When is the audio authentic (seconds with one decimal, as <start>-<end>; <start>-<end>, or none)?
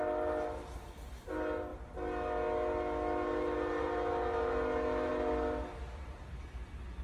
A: 0.0-7.0